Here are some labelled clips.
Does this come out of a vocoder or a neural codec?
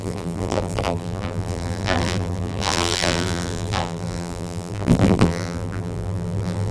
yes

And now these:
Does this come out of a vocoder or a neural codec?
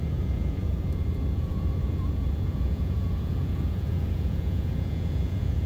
yes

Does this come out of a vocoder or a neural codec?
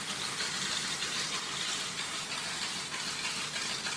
yes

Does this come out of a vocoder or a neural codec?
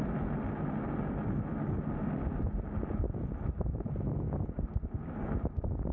no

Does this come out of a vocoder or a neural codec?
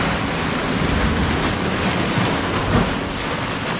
no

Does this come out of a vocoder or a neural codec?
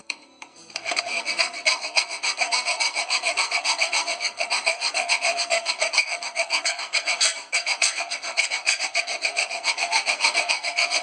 yes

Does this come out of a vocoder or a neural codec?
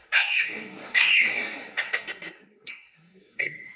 yes